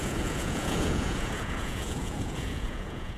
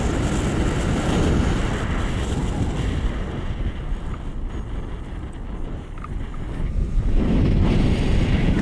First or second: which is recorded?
second